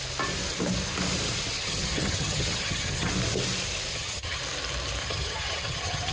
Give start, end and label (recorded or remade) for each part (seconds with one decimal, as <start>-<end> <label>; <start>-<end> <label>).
0.0-1.5 recorded; 1.5-3.1 remade; 3.1-3.9 recorded; 3.9-4.4 remade; 4.4-5.0 recorded; 5.0-6.1 remade